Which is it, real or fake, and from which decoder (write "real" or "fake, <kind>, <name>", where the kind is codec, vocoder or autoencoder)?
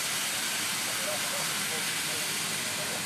real